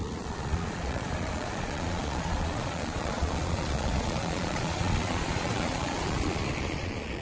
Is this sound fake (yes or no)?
yes